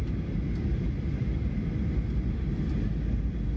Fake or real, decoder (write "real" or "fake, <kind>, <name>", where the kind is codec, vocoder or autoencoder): real